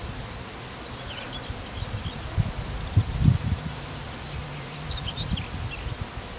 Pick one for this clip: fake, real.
real